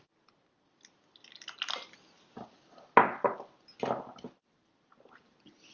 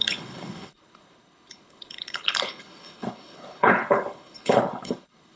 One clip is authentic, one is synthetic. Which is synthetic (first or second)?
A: second